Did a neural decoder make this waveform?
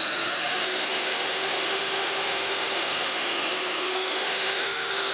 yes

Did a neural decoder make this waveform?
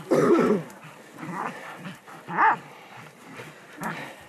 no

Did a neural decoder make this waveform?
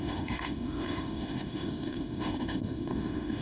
yes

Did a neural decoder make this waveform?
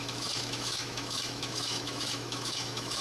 yes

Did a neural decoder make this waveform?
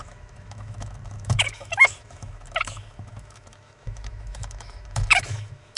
yes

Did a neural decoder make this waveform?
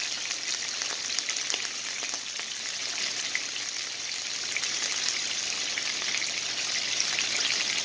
no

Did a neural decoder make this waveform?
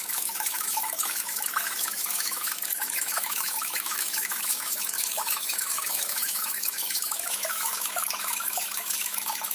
yes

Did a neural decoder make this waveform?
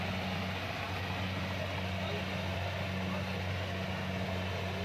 no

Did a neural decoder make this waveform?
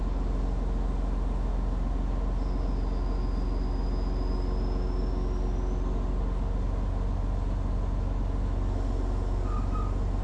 no